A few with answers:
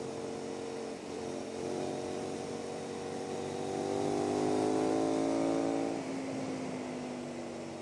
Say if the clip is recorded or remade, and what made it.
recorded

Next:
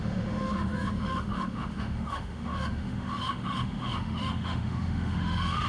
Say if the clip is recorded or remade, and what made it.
remade, autoencoder, DAC-VAE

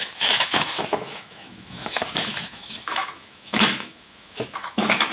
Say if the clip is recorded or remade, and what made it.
remade, autoencoder, DAC-VAE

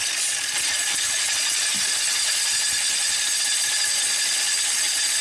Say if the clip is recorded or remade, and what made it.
recorded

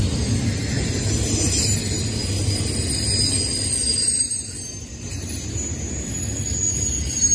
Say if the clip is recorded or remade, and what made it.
recorded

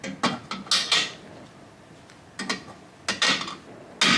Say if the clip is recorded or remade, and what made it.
recorded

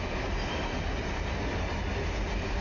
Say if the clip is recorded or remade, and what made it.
recorded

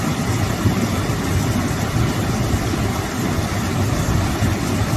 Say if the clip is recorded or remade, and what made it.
recorded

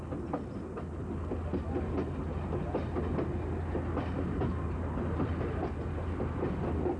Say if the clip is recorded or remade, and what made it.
recorded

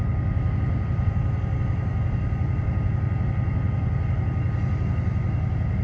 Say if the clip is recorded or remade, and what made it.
recorded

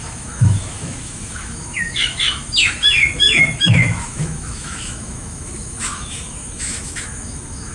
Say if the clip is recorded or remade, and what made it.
remade, autoencoder, DAC-VAE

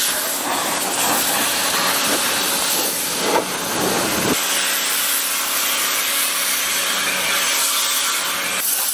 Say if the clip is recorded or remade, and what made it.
recorded